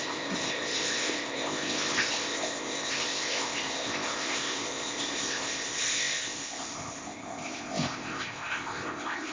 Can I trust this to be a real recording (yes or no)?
no